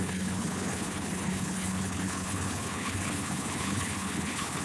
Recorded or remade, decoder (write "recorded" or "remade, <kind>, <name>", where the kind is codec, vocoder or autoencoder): remade, codec, HILCodec